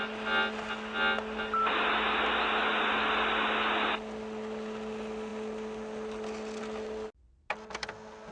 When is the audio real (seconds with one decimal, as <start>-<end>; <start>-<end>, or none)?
0.0-8.3